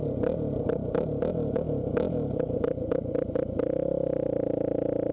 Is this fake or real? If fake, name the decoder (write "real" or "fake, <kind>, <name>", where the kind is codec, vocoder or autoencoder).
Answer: real